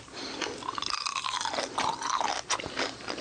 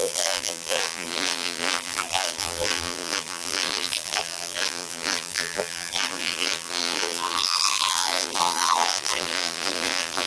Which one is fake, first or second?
second